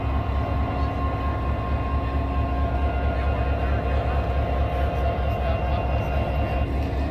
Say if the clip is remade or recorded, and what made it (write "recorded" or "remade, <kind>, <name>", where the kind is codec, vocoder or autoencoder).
recorded